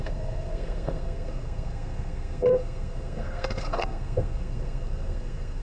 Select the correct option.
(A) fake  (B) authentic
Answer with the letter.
A